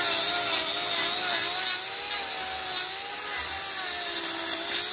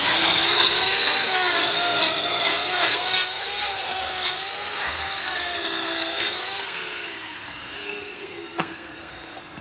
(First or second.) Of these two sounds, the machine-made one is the second